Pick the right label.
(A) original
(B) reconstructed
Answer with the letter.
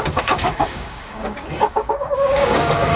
B